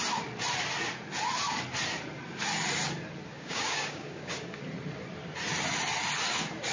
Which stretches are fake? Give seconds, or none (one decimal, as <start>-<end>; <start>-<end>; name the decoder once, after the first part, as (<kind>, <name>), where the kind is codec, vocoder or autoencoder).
3.3-4.6 (codec, DAC)